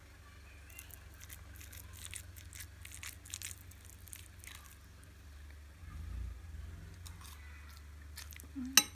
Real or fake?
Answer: real